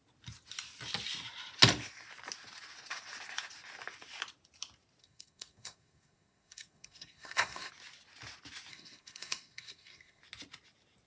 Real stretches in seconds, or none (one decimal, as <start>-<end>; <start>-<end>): 0.0-5.0; 7.7-8.7; 10.2-11.1